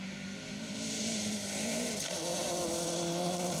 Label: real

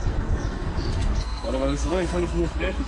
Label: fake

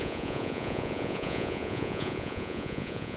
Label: fake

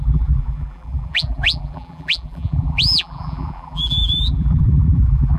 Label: fake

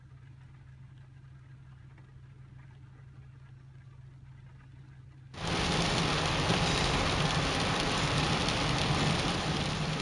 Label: real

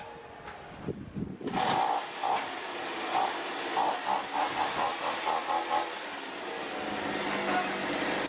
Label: real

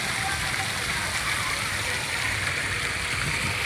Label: fake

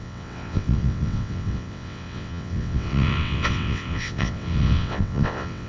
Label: fake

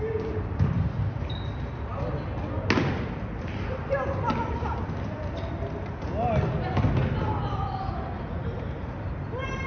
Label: real